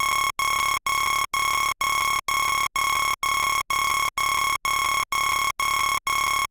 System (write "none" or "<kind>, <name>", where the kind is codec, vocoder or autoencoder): none